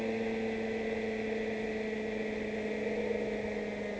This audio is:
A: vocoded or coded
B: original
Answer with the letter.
B